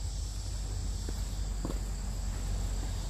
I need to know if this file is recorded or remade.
recorded